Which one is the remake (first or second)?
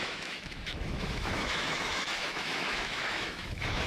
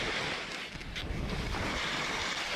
first